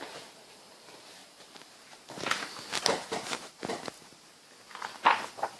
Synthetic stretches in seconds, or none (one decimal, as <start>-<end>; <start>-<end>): 1.2-4.6